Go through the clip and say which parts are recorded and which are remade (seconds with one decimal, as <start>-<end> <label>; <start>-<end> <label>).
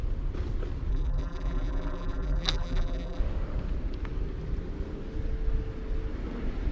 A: 0.0-0.9 recorded; 0.9-3.2 remade; 3.2-6.7 recorded